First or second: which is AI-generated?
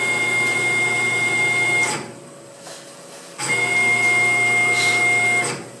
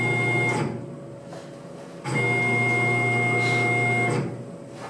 first